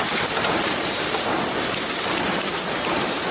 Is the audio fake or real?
real